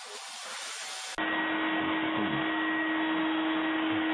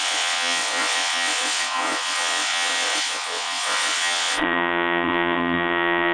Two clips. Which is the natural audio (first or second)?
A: first